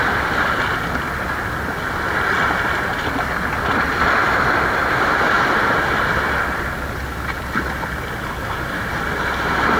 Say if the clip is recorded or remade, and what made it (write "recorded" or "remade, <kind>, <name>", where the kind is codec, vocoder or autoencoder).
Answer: recorded